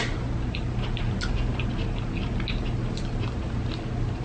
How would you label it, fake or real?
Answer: real